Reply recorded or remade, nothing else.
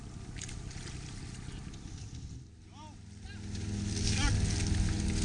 recorded